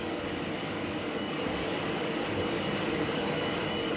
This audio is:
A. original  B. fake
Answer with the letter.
B